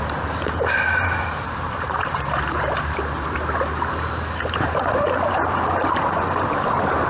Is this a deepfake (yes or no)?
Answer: yes